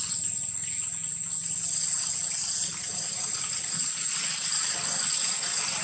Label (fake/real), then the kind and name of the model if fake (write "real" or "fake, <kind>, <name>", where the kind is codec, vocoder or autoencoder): real